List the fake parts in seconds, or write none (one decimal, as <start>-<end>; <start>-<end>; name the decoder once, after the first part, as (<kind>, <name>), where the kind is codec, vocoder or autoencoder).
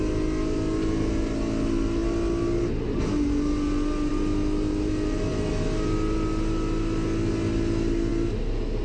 none